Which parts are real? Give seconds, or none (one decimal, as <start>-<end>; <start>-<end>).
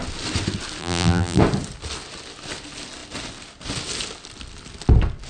0.0-0.8; 1.4-5.3